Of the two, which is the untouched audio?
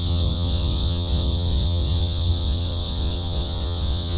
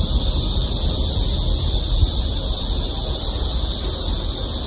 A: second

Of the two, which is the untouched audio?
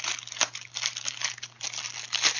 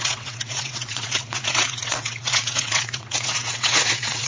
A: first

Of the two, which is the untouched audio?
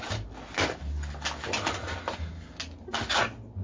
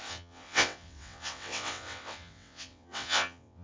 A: first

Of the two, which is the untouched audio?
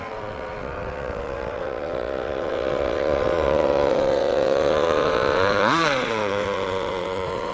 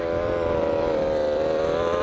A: second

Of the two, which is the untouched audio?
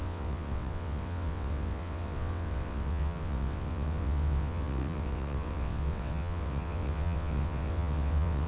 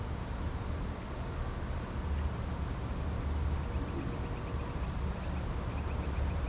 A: second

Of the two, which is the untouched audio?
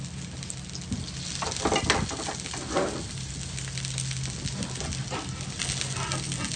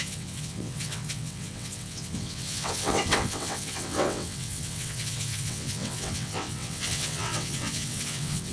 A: first